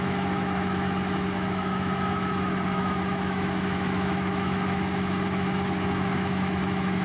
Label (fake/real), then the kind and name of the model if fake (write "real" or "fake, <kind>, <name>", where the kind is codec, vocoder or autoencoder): fake, autoencoder, DAC-VAE